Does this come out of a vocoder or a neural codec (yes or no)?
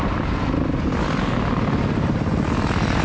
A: no